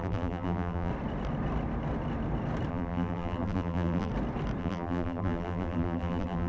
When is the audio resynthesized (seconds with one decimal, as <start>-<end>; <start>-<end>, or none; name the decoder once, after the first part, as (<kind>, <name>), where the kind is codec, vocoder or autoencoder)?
0.0-0.9 (vocoder, BigVGAN v2); 2.7-4.1; 4.6-6.5